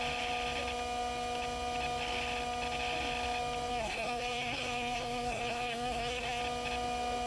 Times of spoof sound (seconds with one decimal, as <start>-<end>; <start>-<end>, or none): 3.7-6.4